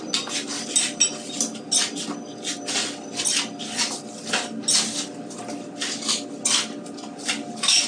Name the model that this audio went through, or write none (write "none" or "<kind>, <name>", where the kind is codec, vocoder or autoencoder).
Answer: none